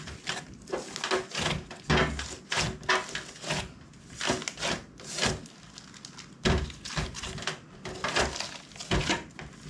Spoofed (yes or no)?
no